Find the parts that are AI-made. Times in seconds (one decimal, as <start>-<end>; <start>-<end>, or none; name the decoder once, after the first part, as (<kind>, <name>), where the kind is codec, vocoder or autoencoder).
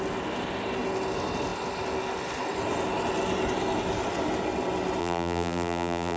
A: 5.0-6.2 (vocoder, BigVGAN v2)